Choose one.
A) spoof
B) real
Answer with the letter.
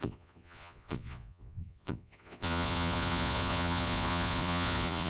A